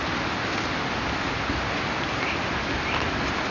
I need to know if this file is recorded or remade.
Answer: recorded